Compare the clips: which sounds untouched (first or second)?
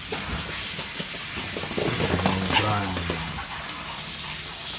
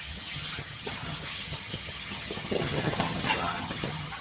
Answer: first